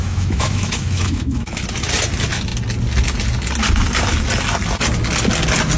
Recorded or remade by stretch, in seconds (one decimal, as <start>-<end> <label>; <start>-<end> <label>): 0.0-1.6 remade; 1.6-5.8 recorded